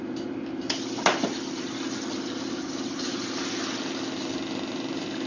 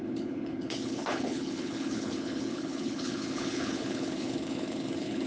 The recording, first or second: first